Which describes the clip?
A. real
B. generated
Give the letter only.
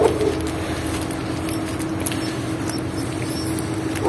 A